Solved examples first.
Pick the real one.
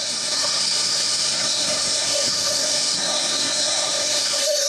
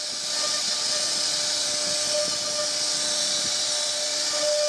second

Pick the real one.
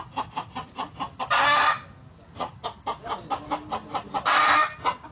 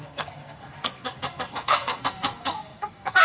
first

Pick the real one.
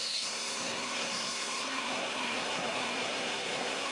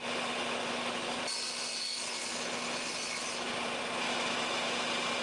second